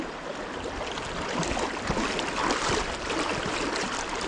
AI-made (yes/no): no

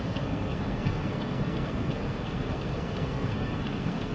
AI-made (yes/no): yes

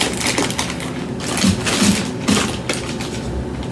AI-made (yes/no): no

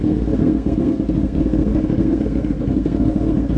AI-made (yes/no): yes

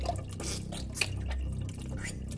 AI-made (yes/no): no